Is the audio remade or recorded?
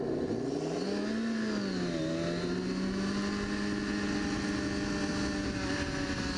recorded